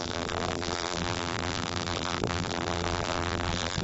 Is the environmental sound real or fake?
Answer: fake